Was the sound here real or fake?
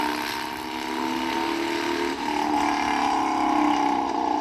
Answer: real